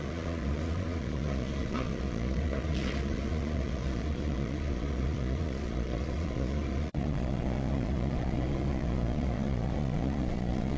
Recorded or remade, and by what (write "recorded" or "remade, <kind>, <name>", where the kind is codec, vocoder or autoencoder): remade, vocoder, Vocos